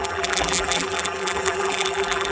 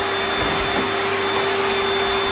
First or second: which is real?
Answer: second